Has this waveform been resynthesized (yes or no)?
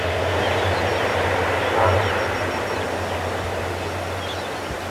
no